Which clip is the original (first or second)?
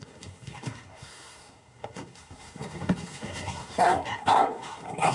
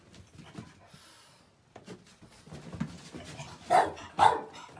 second